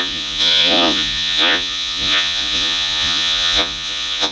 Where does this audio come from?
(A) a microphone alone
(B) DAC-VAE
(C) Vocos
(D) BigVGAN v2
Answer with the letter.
C